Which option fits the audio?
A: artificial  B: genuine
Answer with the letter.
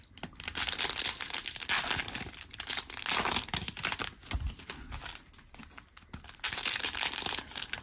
B